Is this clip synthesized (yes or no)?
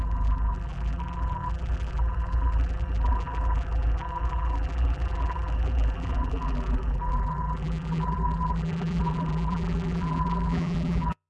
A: yes